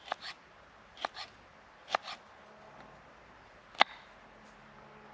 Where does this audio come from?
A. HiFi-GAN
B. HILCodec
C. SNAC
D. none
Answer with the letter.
D